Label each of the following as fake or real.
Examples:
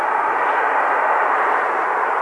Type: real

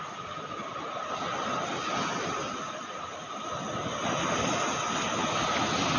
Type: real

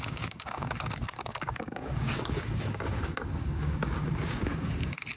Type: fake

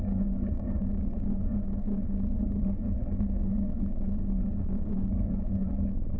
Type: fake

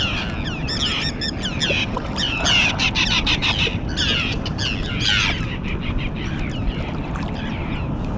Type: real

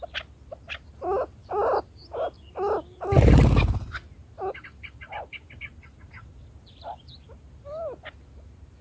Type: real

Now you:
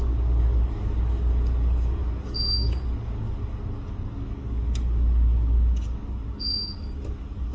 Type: fake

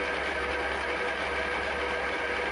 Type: real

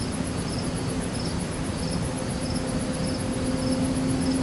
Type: real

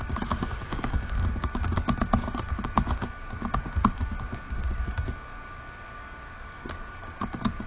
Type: fake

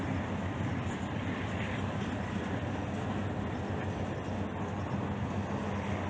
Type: real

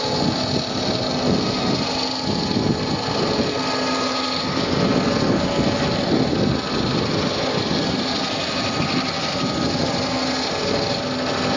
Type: real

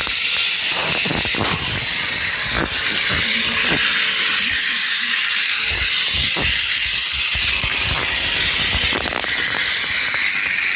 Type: real